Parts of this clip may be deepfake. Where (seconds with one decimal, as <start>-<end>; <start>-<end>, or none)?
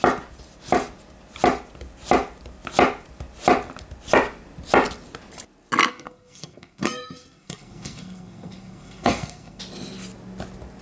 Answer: 5.9-9.6